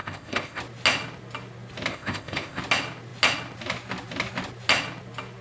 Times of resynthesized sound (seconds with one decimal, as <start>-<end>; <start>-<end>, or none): 0.0-0.6; 1.9-2.6

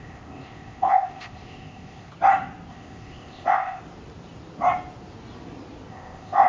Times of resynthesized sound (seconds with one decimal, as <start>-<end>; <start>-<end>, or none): 0.0-2.1; 2.7-3.8; 5.9-6.5

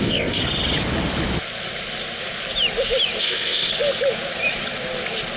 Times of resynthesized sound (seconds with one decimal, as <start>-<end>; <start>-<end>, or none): 0.0-0.4; 3.2-3.7

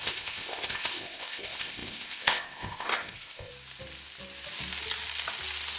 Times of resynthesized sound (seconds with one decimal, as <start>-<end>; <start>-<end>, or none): 0.0-3.5